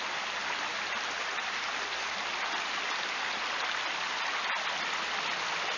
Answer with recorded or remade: recorded